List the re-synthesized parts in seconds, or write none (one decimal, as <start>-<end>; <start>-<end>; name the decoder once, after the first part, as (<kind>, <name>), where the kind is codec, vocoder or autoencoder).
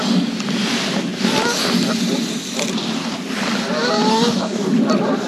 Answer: 4.1-4.7 (codec, DAC)